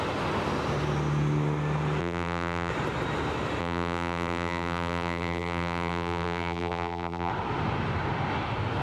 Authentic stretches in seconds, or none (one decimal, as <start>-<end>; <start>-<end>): 0.0-2.0; 2.7-3.6; 7.3-8.8